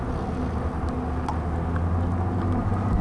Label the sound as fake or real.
real